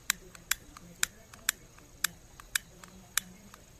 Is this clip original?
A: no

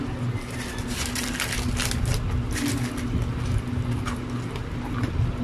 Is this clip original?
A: yes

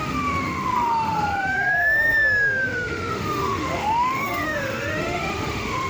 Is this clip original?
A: no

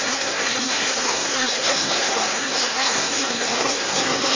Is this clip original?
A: no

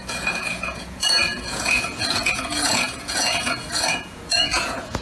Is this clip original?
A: no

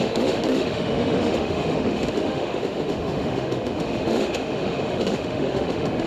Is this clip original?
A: no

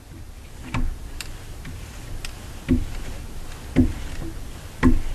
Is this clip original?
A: yes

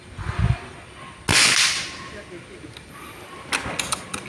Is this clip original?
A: yes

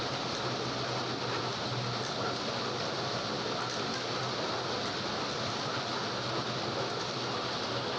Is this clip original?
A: yes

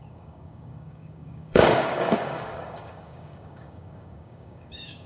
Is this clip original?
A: no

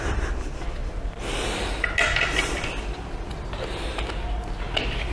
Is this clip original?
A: yes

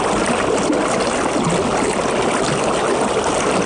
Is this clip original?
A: yes